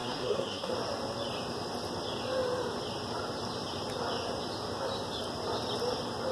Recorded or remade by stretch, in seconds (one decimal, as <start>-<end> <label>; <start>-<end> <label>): 0.0-0.7 remade; 0.7-6.3 recorded